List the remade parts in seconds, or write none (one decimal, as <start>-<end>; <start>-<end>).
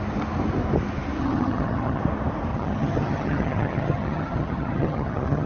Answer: 1.2-2.0; 2.5-5.5